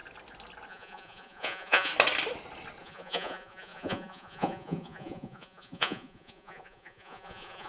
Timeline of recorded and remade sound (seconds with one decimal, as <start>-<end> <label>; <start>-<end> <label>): 0.0-0.7 recorded; 0.7-1.9 remade; 1.9-2.8 recorded; 2.8-7.7 remade